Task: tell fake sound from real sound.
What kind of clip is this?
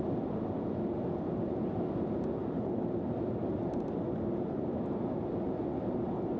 real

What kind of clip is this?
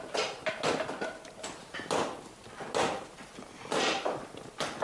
real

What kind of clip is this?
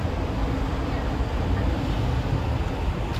real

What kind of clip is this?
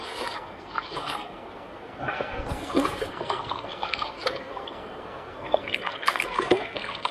fake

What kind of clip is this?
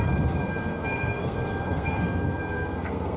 fake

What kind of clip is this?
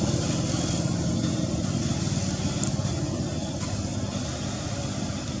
real